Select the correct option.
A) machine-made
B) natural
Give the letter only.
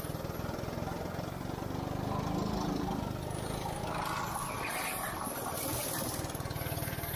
B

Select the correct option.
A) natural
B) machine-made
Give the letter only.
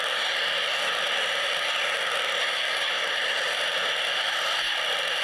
A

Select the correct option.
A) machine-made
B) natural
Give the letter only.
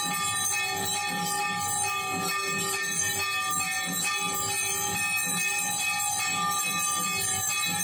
B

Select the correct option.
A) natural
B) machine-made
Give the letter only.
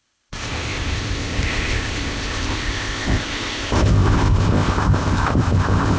B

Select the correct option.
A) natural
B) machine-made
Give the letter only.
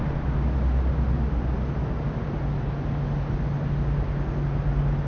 A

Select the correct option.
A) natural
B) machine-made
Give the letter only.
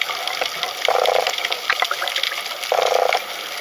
A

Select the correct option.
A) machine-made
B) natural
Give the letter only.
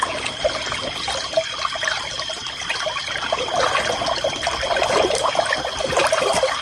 B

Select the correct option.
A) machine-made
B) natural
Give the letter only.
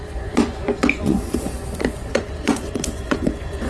A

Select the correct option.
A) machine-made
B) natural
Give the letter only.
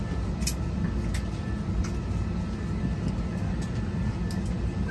B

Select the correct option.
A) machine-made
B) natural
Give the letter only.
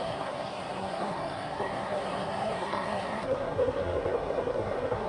A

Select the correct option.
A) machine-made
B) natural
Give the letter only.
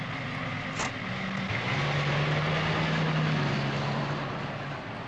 B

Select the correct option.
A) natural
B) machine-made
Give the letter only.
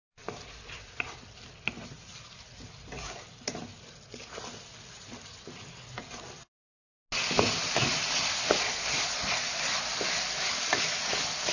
A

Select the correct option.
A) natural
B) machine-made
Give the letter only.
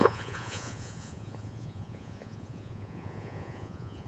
B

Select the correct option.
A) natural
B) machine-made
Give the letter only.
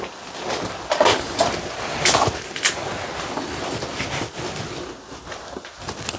A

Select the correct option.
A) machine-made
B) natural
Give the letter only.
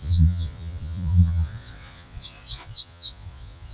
A